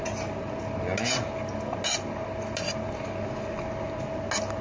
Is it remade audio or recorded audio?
recorded